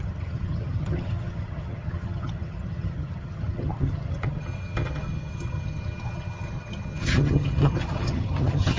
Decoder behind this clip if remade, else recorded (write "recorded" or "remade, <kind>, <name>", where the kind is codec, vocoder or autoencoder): remade, vocoder, HiFi-GAN